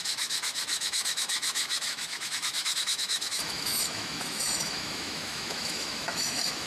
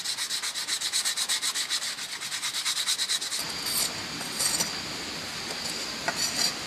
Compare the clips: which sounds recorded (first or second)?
second